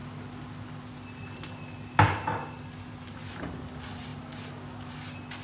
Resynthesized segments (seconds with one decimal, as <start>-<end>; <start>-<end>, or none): none